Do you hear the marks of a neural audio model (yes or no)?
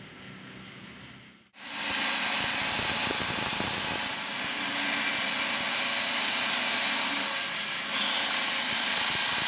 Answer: no